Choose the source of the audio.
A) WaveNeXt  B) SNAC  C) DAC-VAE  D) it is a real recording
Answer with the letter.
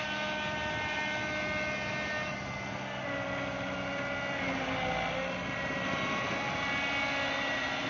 D